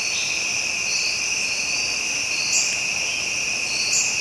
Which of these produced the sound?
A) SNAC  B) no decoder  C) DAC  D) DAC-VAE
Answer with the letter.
B